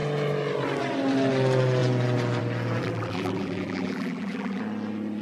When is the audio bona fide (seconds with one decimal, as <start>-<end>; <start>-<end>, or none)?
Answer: 0.0-2.8; 4.6-5.2